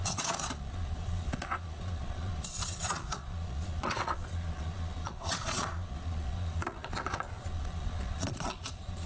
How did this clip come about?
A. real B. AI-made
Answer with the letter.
B